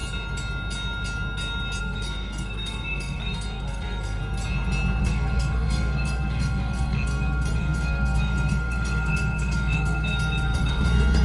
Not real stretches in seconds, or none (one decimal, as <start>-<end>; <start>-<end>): 1.8-4.2; 5.0-11.2